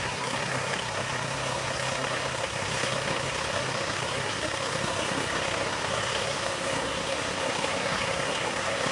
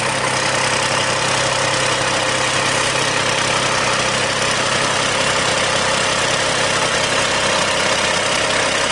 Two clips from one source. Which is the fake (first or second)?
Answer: first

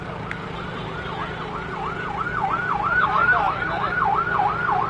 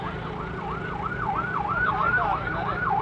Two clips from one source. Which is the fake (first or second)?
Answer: second